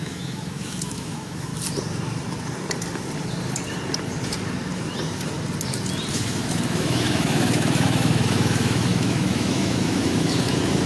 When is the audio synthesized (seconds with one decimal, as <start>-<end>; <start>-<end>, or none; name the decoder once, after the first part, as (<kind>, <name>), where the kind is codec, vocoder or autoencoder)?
0.0-1.5 (autoencoder, DAC-VAE); 6.1-10.9